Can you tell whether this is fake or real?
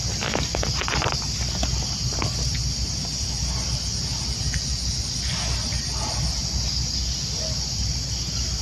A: real